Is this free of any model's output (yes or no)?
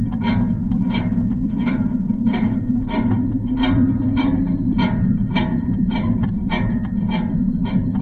no